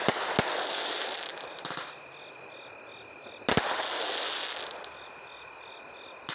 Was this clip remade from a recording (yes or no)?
no